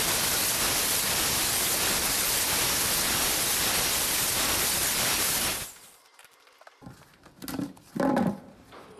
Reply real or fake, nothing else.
real